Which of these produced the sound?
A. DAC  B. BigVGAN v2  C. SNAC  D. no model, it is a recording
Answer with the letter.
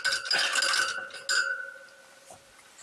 D